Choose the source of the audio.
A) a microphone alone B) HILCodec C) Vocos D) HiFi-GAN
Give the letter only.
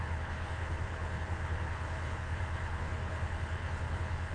B